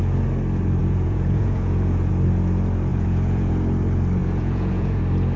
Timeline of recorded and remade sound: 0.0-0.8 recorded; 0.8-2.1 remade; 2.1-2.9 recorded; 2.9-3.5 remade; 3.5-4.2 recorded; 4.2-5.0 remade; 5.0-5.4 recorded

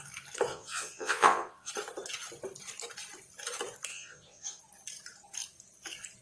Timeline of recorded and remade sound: 0.0-0.5 recorded; 0.5-1.7 remade; 1.7-3.9 recorded; 3.9-4.6 remade; 4.6-6.2 recorded